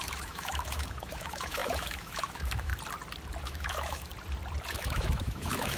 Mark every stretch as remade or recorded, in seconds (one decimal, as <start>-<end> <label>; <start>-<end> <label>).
0.0-2.7 remade; 2.7-3.4 recorded; 3.4-4.1 remade; 4.1-4.7 recorded; 4.7-5.8 remade